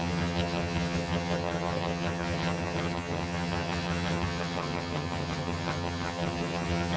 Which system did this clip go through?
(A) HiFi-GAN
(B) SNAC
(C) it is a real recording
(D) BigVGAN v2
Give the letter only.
A